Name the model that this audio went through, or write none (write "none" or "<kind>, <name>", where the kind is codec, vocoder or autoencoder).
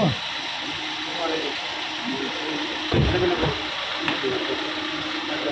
none